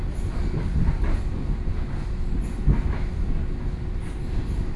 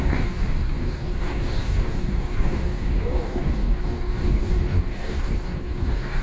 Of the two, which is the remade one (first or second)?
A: second